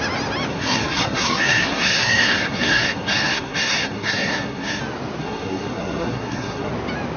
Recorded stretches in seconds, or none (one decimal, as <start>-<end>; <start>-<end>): 0.0-0.5; 4.8-5.2; 6.7-7.2